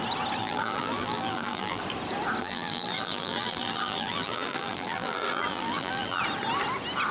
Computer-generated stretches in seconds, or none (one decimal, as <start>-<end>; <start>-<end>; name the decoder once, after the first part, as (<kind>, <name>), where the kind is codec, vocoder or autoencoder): 0.4-1.8 (vocoder, BigVGAN v2); 2.4-6.2